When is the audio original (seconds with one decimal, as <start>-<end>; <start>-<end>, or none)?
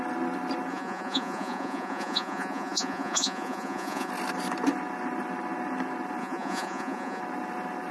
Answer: 0.0-0.7; 4.1-6.2; 7.2-7.9